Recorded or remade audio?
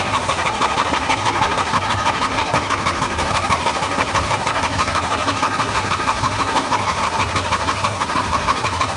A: remade